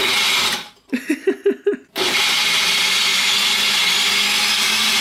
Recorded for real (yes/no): yes